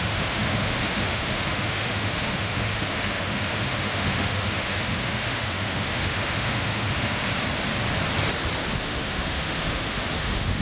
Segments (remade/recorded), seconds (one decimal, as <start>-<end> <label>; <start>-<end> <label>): 0.0-7.2 remade; 7.2-8.8 recorded; 8.8-10.6 remade

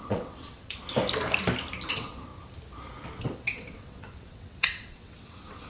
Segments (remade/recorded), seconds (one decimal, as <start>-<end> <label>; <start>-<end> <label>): 0.0-0.8 remade; 0.8-1.9 recorded; 1.9-2.3 remade; 2.3-3.2 recorded; 3.2-5.7 remade

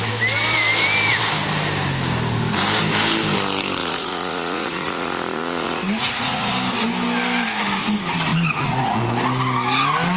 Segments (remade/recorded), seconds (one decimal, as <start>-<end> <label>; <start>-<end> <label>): 0.0-3.8 recorded; 3.8-6.5 remade; 6.5-8.3 recorded; 8.3-9.0 remade; 9.0-10.2 recorded

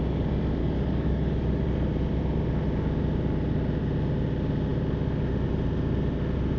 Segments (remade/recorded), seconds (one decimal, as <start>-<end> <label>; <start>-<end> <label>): 0.0-0.6 recorded; 0.6-1.6 remade; 1.6-6.6 recorded

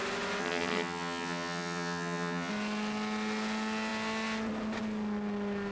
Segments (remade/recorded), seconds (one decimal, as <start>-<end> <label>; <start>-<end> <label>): 0.0-0.4 recorded; 0.4-2.5 remade; 2.5-5.7 recorded